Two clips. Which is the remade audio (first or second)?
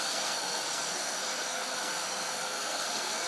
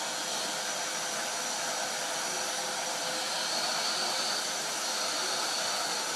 first